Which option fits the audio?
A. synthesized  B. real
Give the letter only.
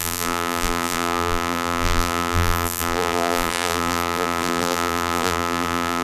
A